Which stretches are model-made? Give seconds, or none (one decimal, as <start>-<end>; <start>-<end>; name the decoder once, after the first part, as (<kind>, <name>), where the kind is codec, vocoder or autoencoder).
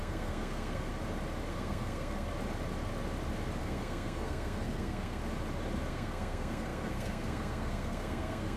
0.0-0.9 (codec, SNAC); 1.5-2.3; 3.6-5.2; 5.9-8.6